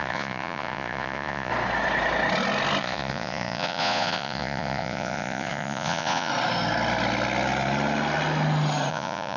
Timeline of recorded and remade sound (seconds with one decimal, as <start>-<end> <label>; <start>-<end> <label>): 0.0-1.5 remade; 1.5-2.8 recorded; 2.8-6.3 remade; 6.3-8.9 recorded; 8.9-9.4 remade